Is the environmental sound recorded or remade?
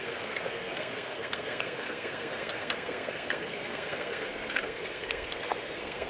remade